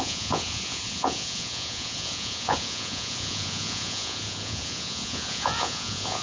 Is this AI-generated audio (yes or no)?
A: yes